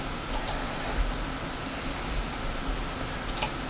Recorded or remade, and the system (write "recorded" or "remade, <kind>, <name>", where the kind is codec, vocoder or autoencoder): recorded